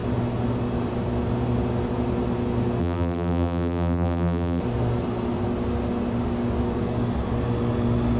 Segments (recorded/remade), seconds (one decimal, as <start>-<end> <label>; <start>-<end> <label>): 0.0-2.8 recorded; 2.8-4.6 remade; 4.6-8.2 recorded